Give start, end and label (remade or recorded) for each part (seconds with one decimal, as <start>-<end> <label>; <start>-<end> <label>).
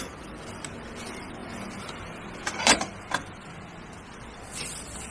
0.0-5.1 recorded